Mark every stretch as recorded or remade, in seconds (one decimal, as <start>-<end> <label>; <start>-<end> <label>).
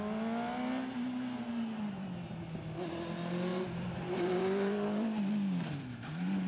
0.0-3.5 recorded; 3.5-6.5 remade